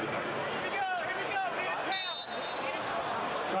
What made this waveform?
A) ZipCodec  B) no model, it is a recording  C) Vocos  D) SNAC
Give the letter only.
B